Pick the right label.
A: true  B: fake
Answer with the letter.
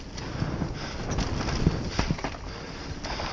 A